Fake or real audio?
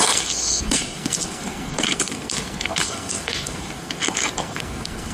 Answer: fake